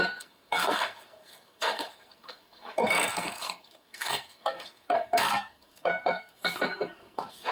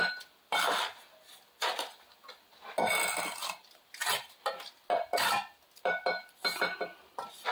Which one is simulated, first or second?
first